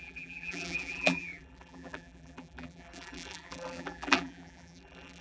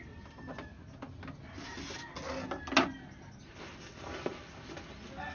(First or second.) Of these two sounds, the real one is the second